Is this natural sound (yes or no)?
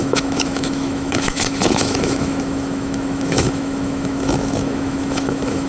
no